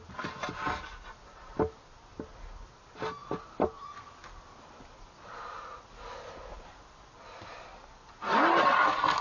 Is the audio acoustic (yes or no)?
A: yes